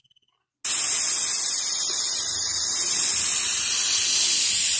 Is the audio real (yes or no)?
yes